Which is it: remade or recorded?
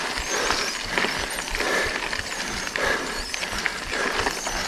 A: recorded